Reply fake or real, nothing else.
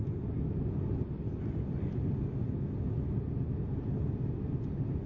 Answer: real